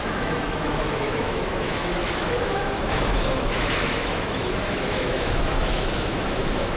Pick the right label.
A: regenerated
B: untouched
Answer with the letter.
A